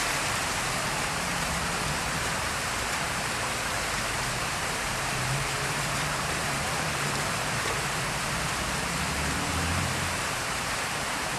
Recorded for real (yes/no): no